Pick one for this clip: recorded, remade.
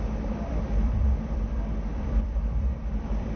remade